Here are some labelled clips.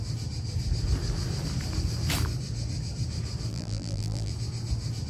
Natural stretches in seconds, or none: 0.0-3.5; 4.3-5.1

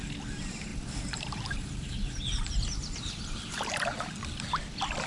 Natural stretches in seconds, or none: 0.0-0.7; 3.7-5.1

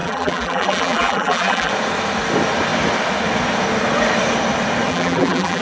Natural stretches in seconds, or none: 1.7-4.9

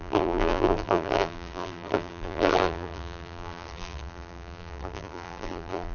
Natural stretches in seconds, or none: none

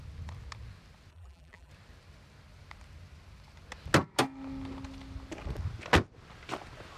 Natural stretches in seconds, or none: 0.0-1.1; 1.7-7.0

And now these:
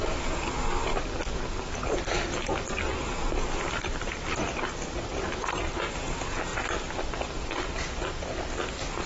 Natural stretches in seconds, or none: 0.0-2.9; 5.7-6.5; 8.4-9.1

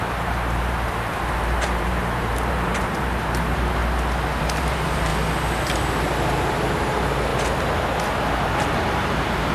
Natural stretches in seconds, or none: 3.8-4.4; 5.1-6.8; 7.3-8.7

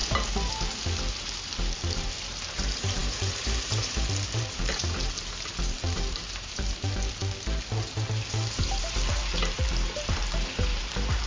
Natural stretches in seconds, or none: 0.0-1.0; 7.2-8.3